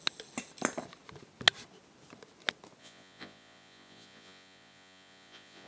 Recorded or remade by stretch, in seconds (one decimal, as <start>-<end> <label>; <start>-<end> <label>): 0.0-2.8 recorded; 2.8-5.7 remade